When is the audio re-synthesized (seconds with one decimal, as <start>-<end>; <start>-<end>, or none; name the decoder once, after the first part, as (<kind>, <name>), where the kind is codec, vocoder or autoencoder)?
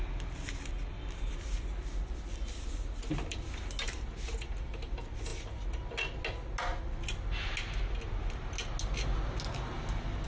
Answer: none